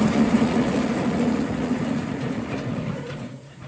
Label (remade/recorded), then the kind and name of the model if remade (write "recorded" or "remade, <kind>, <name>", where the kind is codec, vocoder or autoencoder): remade, vocoder, Vocos